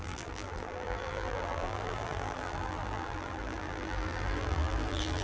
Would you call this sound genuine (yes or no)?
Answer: no